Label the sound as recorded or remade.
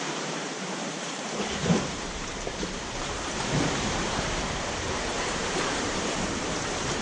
remade